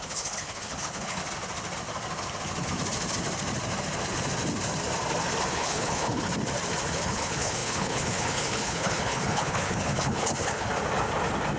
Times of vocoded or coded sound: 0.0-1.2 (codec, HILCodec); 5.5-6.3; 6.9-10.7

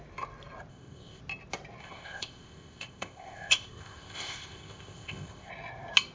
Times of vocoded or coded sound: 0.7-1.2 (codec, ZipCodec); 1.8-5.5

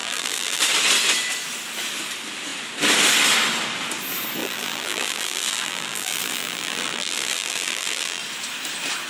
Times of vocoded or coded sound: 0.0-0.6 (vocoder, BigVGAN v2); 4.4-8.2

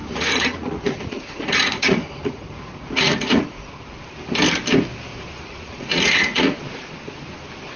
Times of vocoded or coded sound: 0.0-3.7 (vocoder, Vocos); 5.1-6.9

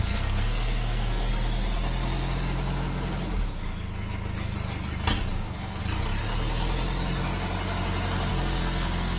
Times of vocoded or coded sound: 0.0-1.3 (codec, SNAC); 5.3-5.8; 8.3-9.2

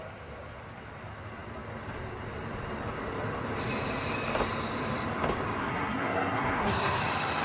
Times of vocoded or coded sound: 5.6-7.0 (codec, SNAC)

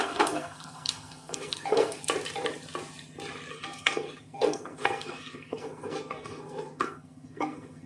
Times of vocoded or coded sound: 0.0-2.0 (codec, SNAC); 3.5-7.9

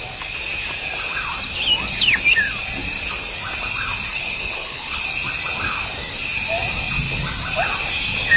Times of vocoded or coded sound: 4.1-5.0 (codec, HILCodec)